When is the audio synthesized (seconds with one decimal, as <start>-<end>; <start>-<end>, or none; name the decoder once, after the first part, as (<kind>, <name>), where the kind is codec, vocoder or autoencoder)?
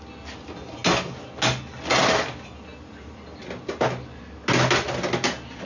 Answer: none